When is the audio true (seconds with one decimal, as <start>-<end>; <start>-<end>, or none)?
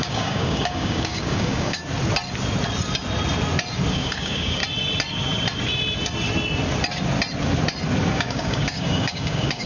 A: 1.8-3.9; 4.6-8.1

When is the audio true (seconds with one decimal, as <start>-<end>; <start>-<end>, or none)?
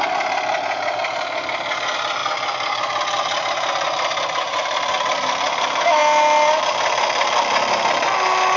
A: 0.0-8.6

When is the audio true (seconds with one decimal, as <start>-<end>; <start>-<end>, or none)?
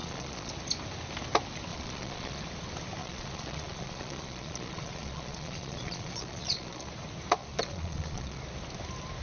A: 0.5-1.7; 2.4-3.0; 6.9-7.4; 8.4-9.2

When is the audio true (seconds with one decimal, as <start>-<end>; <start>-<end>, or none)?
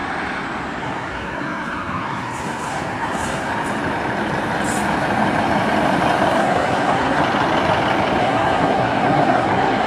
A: 0.0-0.8; 3.5-6.3; 7.2-8.2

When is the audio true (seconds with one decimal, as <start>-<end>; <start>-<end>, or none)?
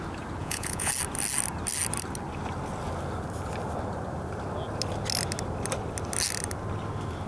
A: 0.0-0.4; 0.9-7.3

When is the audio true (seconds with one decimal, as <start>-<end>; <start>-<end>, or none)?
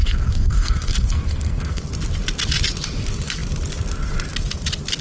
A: 1.8-5.0